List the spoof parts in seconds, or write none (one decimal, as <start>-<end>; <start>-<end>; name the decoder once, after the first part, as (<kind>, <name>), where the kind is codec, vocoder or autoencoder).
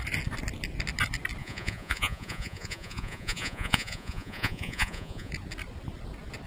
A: 1.4-5.3 (vocoder, Vocos)